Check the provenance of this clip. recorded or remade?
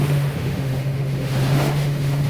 remade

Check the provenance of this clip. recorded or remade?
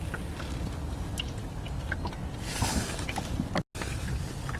recorded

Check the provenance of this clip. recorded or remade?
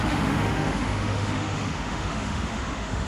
remade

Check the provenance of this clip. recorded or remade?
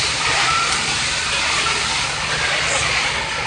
recorded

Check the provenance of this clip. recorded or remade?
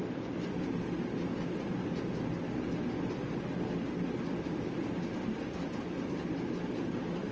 recorded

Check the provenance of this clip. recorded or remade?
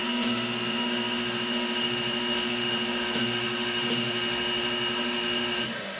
remade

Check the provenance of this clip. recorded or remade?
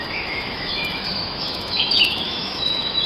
remade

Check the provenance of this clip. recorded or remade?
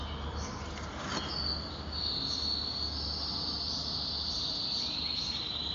recorded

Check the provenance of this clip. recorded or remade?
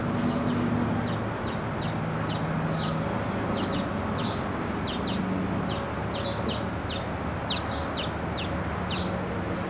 recorded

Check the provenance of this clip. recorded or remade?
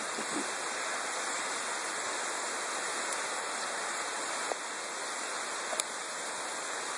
recorded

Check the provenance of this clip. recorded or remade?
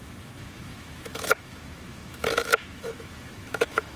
remade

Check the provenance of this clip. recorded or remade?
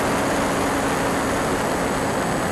recorded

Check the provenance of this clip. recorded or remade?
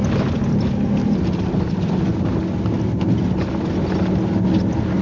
recorded